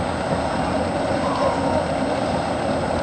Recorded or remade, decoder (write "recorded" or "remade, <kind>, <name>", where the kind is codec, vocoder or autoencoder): recorded